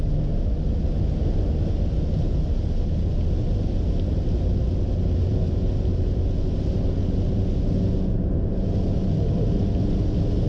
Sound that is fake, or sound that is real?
real